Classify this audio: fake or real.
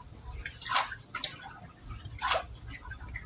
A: real